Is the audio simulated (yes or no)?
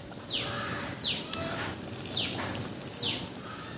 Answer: no